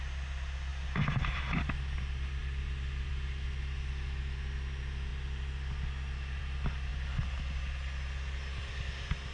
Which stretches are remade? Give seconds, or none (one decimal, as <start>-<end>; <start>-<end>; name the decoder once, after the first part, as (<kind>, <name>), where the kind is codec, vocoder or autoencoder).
none